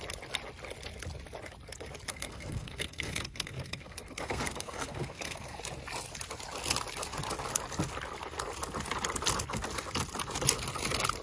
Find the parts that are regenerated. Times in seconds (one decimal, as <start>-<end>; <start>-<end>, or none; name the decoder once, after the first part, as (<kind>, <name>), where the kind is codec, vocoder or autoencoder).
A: 2.1-5.6 (codec, SNAC)